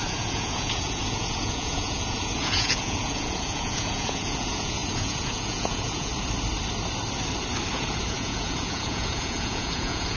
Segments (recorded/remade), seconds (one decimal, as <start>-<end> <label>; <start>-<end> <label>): 0.0-6.1 remade; 6.1-7.7 recorded; 7.7-10.2 remade